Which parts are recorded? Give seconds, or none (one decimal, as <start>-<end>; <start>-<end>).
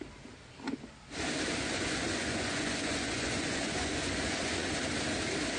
0.0-1.6; 4.7-5.6